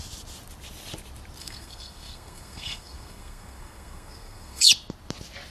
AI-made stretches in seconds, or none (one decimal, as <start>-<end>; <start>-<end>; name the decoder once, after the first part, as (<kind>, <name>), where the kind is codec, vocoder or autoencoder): 1.4-4.7 (codec, SNAC)